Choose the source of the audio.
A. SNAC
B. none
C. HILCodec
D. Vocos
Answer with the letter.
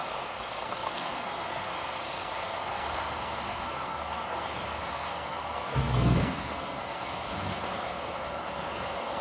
A